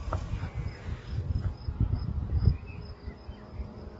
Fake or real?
real